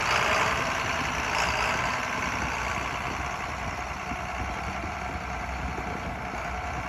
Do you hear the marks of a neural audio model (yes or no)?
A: no